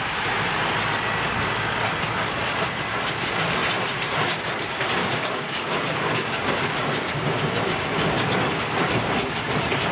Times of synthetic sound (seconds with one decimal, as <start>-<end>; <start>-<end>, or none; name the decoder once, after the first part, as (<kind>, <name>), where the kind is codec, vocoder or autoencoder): 5.0-8.9 (codec, DAC)